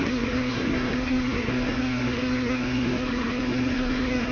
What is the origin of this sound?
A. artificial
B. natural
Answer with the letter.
A